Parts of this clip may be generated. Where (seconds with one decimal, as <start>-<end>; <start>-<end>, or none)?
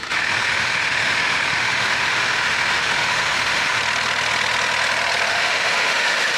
0.0-3.8; 5.3-6.4